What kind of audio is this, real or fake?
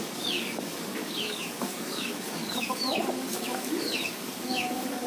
fake